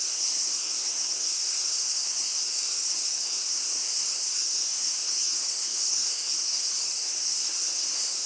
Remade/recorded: remade